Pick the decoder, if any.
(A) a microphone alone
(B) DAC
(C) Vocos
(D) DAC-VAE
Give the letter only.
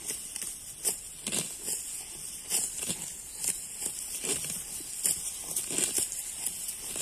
A